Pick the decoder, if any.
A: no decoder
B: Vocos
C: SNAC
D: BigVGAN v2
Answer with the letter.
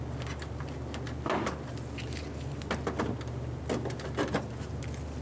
A